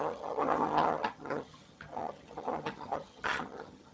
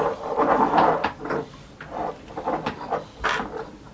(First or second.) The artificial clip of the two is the first